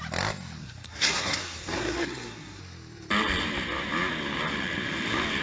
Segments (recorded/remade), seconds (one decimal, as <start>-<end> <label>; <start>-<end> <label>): 0.0-0.6 recorded; 0.6-2.6 remade; 2.6-5.4 recorded